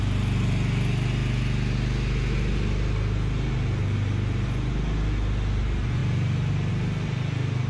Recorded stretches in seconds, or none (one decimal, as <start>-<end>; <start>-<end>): 0.0-7.7